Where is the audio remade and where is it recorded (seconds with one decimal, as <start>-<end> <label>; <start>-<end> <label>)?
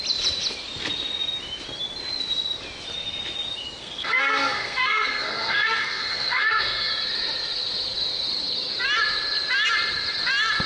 0.0-3.8 recorded; 3.8-6.9 remade; 6.9-10.7 recorded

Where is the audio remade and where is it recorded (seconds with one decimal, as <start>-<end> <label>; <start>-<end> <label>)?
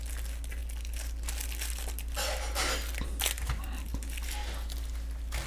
0.0-5.5 recorded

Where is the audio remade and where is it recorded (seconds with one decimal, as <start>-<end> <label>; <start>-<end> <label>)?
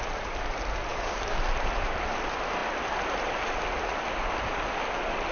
0.0-0.9 recorded; 0.9-1.4 remade; 1.4-5.3 recorded